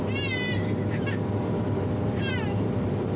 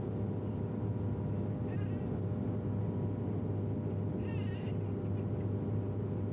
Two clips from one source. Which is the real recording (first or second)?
second